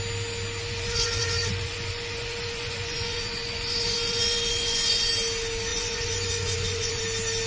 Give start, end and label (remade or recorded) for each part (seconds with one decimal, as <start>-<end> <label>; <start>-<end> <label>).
0.0-0.6 recorded; 0.6-5.1 remade; 5.1-5.7 recorded; 5.7-7.0 remade; 7.0-7.5 recorded